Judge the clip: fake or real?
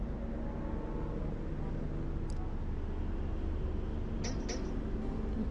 real